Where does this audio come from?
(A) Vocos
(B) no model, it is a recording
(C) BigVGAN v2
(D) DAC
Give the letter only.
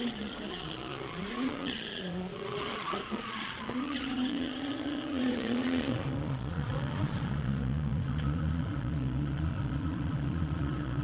A